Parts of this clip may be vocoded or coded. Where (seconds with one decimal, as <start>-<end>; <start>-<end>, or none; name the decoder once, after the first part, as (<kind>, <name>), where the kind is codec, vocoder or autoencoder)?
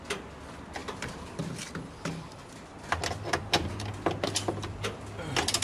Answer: none